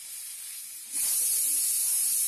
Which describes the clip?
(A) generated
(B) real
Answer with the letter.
B